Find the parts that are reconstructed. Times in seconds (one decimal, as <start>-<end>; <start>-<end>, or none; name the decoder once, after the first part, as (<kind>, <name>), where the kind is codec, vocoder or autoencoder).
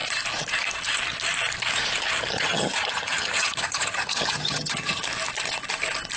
2.4-5.0 (vocoder, HiFi-GAN)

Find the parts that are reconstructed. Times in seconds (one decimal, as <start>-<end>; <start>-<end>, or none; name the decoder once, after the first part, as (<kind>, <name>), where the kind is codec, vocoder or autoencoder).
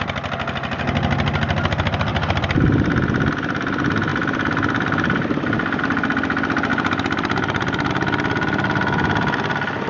2.1-3.3 (vocoder, BigVGAN v2); 4.1-5.8; 6.7-7.9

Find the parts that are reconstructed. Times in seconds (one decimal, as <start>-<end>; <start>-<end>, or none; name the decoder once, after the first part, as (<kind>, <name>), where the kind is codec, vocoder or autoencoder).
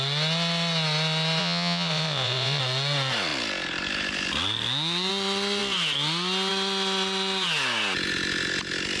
1.4-2.6 (vocoder, Vocos)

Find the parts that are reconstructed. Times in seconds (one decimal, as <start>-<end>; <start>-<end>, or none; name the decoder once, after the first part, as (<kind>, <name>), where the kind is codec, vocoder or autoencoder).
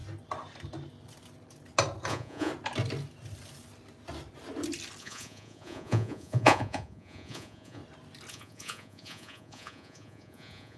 2.1-2.5 (vocoder, Vocos); 5.0-7.8; 8.3-10.8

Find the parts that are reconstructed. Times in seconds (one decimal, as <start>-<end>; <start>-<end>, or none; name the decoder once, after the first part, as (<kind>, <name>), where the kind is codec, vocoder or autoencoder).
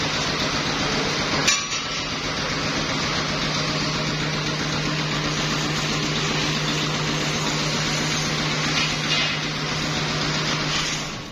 none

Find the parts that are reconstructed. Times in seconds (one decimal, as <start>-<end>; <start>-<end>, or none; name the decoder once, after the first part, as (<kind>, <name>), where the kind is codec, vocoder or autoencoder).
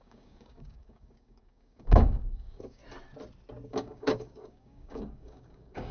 0.0-2.8 (codec, DAC); 3.7-5.9